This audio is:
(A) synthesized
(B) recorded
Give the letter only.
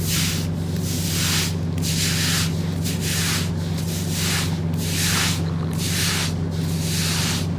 B